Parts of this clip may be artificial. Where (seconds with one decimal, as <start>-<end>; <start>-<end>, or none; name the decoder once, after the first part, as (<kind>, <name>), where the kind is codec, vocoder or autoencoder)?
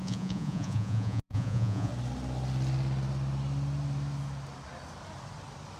0.0-1.9 (vocoder, Vocos)